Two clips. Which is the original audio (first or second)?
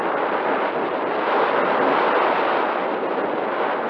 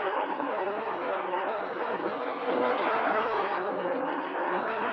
first